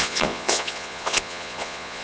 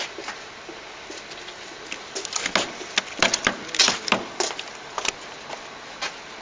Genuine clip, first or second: second